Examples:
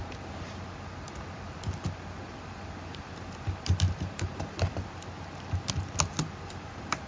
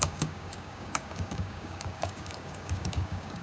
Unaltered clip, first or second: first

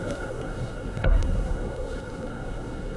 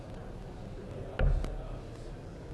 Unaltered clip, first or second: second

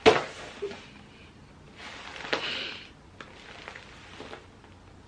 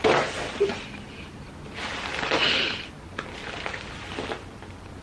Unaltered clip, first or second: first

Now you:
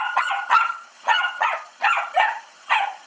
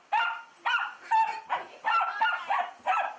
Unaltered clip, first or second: second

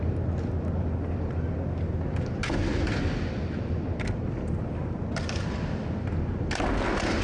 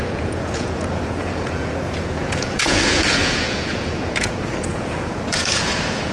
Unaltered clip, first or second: first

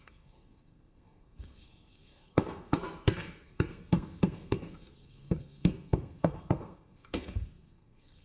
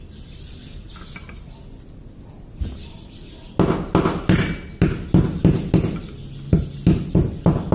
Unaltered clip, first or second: second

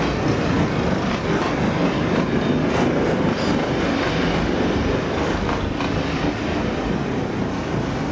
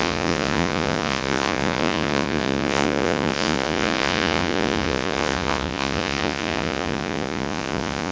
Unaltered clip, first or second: first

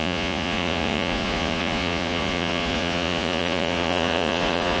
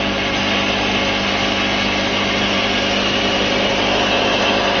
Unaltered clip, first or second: second